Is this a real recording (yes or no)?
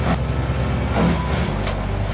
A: yes